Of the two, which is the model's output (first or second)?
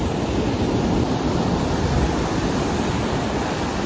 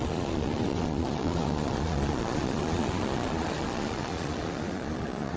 second